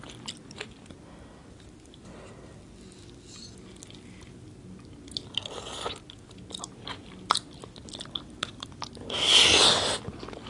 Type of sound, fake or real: real